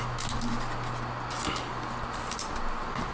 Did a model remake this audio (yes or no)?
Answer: no